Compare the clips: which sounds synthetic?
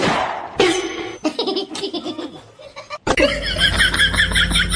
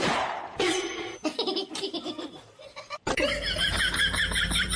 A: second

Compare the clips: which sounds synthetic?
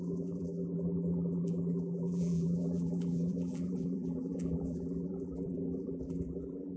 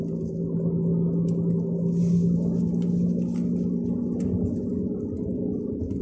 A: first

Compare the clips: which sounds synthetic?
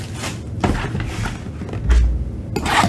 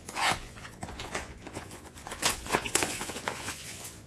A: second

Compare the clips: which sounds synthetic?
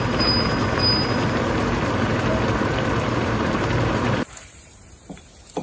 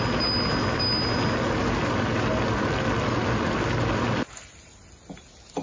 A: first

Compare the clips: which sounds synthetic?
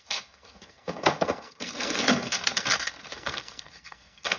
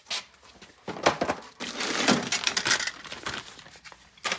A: first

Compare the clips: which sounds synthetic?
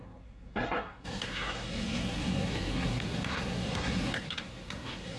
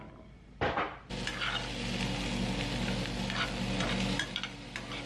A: first